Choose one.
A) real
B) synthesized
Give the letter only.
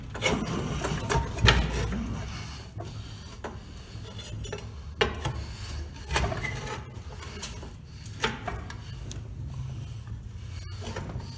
A